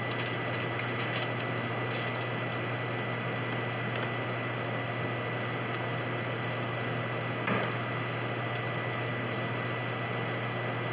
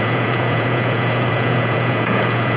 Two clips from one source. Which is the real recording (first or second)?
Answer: first